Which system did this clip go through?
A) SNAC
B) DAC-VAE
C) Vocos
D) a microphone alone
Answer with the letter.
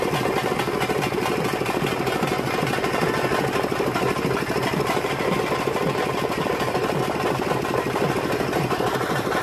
D